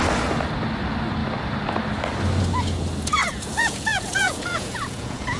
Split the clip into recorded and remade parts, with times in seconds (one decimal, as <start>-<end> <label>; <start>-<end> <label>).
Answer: 0.0-3.2 recorded; 3.2-5.4 remade